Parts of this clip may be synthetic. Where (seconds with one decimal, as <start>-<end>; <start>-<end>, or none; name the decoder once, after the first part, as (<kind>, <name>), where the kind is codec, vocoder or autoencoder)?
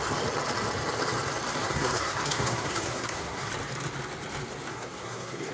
1.6-3.5 (codec, SNAC); 4.7-5.5